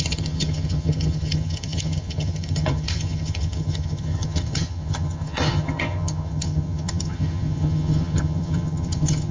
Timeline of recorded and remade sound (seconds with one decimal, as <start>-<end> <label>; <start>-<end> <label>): 0.0-9.3 remade